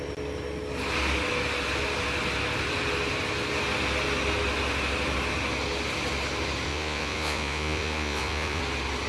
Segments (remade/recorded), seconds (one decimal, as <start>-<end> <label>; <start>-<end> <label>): 0.0-6.7 recorded; 6.7-8.6 remade; 8.6-9.1 recorded